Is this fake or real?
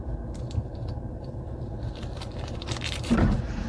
fake